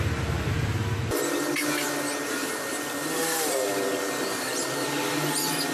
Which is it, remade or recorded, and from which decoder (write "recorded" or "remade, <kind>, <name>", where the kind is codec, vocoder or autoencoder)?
recorded